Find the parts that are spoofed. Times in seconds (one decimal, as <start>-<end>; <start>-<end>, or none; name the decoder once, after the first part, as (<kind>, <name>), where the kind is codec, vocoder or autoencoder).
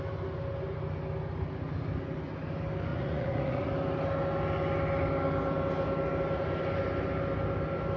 2.9-3.7 (vocoder, Vocos)